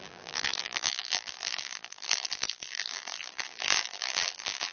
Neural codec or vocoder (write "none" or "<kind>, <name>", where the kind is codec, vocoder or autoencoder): vocoder, BigVGAN v2